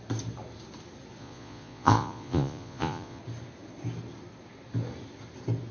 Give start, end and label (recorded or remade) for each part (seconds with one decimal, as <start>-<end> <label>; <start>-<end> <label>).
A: 0.0-1.2 recorded; 1.2-3.2 remade; 3.2-5.7 recorded